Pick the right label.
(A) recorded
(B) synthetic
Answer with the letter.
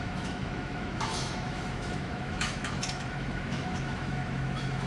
B